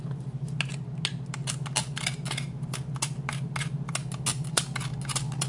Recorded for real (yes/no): yes